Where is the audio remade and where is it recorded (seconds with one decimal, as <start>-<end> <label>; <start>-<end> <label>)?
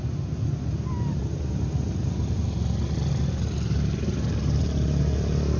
0.0-5.6 recorded